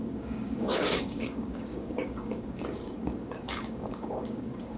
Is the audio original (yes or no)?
no